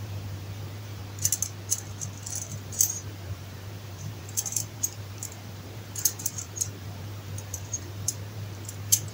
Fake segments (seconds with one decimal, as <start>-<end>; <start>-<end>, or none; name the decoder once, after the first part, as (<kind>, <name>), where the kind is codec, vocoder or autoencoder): 0.0-1.0 (vocoder, BigVGAN v2); 2.5-9.1